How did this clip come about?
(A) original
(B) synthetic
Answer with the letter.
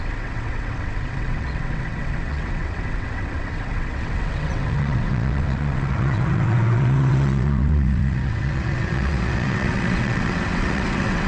B